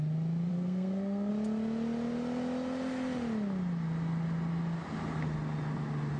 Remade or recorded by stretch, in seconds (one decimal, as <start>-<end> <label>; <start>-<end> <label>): 0.0-0.5 recorded; 0.5-1.3 remade; 1.3-6.2 recorded